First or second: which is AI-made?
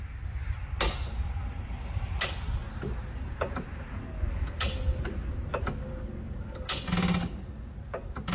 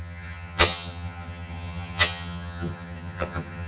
second